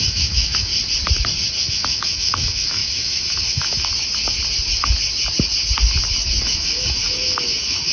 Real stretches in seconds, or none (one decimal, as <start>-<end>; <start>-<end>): 0.7-1.7; 3.9-6.4